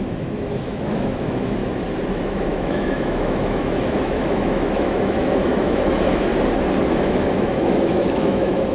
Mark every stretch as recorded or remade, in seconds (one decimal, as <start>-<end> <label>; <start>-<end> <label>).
0.0-1.6 remade; 1.6-2.1 recorded; 2.1-6.3 remade; 6.3-6.9 recorded; 6.9-8.7 remade